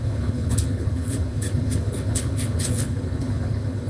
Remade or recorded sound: remade